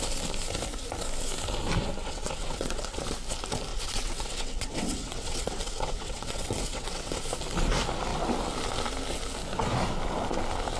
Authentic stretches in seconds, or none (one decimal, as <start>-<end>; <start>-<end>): 0.0-2.0; 3.0-3.7; 7.2-10.8